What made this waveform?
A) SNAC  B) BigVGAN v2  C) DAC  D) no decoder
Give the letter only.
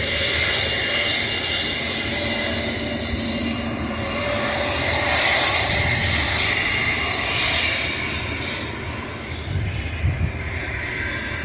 D